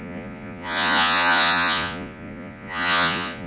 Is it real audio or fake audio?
fake